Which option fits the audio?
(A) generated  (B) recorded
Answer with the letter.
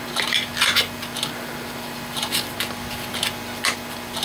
B